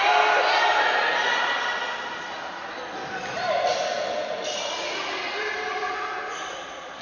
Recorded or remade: recorded